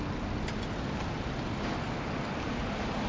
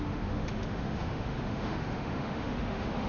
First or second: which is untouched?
first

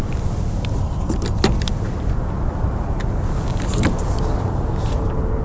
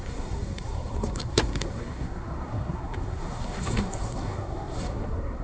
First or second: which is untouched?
first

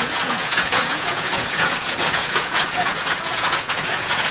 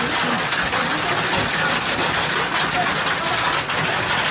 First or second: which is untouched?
second